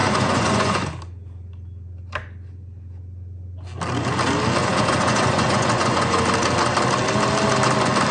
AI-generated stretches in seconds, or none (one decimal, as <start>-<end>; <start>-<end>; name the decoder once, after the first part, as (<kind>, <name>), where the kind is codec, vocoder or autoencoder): 0.0-0.9 (vocoder, Vocos); 4.6-6.2